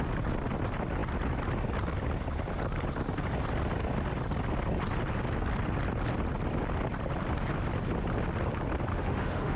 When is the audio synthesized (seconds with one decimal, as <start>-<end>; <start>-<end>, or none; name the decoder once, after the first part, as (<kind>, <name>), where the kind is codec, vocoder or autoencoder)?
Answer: 8.9-9.6 (autoencoder, DAC-VAE)